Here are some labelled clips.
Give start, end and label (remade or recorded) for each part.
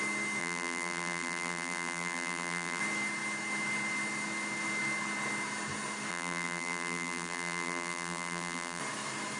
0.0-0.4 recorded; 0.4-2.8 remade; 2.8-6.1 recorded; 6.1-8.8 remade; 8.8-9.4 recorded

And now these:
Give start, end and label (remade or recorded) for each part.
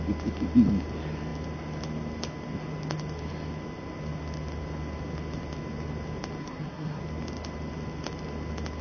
0.0-6.4 recorded; 6.4-7.0 remade; 7.0-8.8 recorded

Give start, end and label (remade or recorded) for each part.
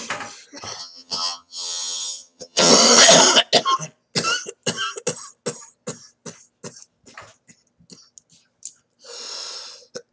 0.0-0.8 recorded; 0.8-2.7 remade; 2.7-10.1 recorded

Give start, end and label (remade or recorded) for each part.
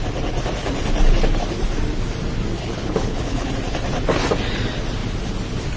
0.0-2.6 recorded; 2.6-3.5 remade; 3.5-5.8 recorded